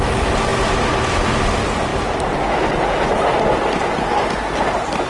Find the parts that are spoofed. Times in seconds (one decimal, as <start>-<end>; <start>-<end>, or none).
none